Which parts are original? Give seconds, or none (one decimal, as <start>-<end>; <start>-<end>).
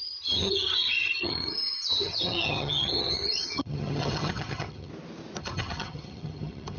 4.9-5.4